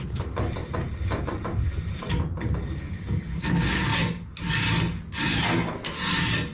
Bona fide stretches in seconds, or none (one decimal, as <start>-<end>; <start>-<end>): 0.0-6.5